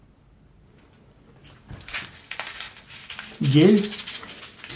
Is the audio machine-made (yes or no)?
no